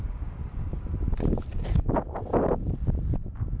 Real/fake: real